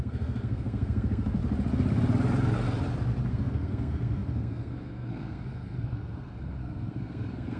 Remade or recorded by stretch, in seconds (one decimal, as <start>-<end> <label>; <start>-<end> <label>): 0.0-1.4 remade; 1.4-3.3 recorded; 3.3-7.6 remade